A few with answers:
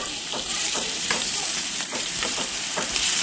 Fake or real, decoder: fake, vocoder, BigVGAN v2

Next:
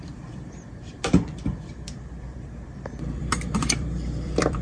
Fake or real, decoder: fake, vocoder, BigVGAN v2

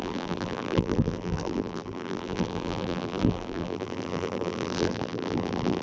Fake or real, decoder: fake, vocoder, BigVGAN v2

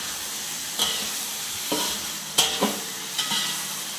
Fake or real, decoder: fake, vocoder, BigVGAN v2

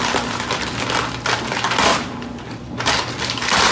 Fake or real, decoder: real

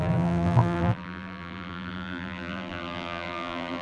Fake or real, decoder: fake, vocoder, BigVGAN v2